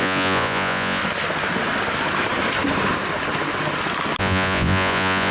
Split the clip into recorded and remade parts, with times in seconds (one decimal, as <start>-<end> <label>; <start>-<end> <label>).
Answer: 0.0-1.0 remade; 1.0-4.2 recorded; 4.2-5.3 remade

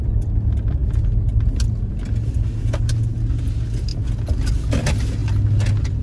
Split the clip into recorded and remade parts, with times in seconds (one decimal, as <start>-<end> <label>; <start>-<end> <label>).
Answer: 0.0-6.0 recorded